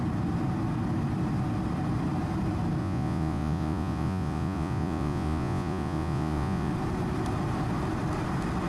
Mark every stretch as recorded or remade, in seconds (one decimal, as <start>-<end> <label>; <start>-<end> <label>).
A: 0.0-2.8 recorded; 2.8-6.7 remade; 6.7-8.7 recorded

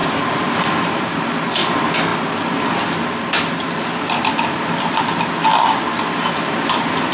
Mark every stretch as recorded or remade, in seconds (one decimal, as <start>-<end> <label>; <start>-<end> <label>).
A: 0.0-1.5 remade; 1.5-7.1 recorded

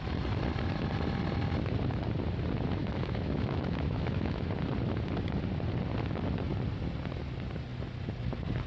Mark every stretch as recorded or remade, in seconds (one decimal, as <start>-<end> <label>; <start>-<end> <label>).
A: 0.0-2.8 recorded; 2.8-4.5 remade; 4.5-8.7 recorded